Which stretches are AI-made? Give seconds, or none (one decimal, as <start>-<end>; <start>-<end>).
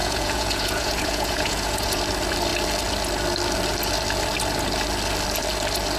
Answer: 0.0-2.0